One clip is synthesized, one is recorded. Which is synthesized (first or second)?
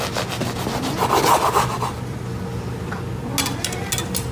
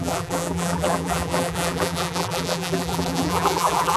second